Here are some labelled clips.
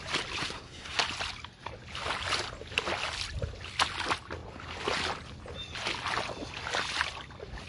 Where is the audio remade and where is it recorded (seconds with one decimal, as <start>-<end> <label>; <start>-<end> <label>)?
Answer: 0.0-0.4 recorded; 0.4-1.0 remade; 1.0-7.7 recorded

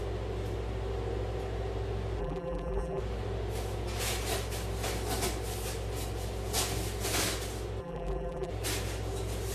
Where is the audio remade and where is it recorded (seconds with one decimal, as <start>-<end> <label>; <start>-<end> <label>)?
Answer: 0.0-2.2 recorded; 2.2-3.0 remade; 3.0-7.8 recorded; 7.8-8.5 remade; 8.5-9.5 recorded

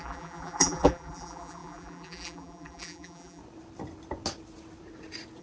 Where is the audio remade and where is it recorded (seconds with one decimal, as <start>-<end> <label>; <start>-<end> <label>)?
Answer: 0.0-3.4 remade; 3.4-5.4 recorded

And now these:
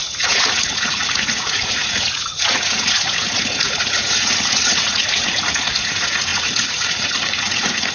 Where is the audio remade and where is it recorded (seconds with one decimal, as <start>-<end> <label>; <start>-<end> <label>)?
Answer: 0.0-7.9 remade

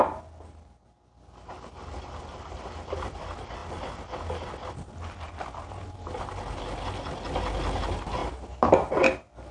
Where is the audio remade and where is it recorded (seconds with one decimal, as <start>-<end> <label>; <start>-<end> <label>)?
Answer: 0.0-9.5 recorded

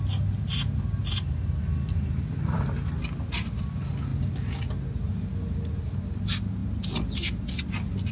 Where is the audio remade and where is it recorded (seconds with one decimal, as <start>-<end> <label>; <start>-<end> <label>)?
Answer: 0.0-8.1 recorded

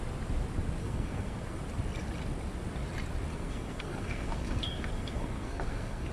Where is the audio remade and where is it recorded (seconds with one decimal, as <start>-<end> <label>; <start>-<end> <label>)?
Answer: 0.0-0.8 recorded; 0.8-1.6 remade; 1.6-3.3 recorded; 3.3-6.1 remade

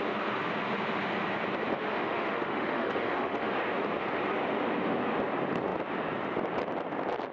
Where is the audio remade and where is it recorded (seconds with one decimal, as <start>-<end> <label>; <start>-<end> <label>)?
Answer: 0.0-1.9 recorded; 1.9-3.5 remade; 3.5-7.3 recorded